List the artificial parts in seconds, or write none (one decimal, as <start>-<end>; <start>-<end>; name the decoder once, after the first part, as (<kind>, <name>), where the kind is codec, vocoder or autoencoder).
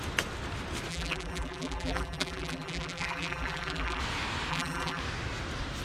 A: 0.9-4.0 (vocoder, BigVGAN v2); 4.5-5.0